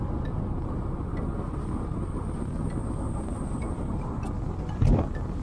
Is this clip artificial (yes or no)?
no